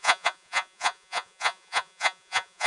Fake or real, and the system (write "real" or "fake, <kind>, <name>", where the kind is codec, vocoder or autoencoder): fake, vocoder, Vocos